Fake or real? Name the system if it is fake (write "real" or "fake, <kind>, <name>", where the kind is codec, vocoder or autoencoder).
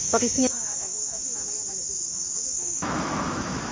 fake, autoencoder, DAC-VAE